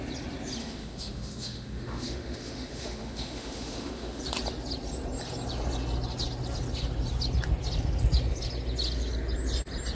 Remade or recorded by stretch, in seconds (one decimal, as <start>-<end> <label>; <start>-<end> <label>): 0.0-0.6 recorded; 0.6-4.2 remade; 4.2-9.9 recorded